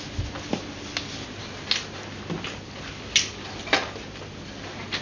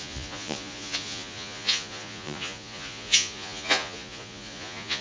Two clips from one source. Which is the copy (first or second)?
second